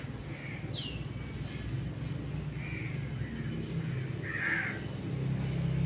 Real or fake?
real